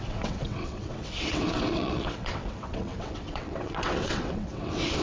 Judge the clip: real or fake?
fake